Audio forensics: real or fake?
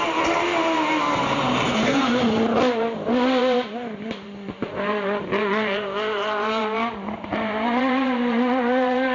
fake